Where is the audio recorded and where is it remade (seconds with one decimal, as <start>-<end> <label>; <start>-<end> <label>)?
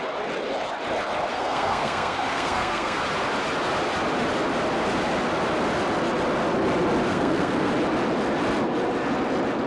0.0-1.3 recorded; 1.3-3.0 remade; 3.0-7.1 recorded; 7.1-7.7 remade; 7.7-9.7 recorded